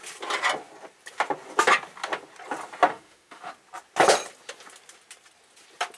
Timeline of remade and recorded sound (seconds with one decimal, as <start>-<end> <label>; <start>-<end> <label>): 0.0-2.9 recorded; 2.9-3.5 remade; 3.5-6.0 recorded

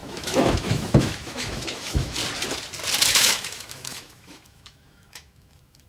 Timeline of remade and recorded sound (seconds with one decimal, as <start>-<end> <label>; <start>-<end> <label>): 0.0-2.2 remade; 2.2-3.1 recorded; 3.1-5.9 remade

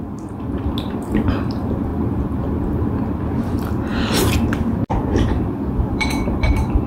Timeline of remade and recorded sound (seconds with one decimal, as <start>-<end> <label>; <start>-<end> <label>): 0.0-6.9 recorded